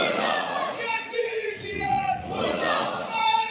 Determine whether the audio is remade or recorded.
remade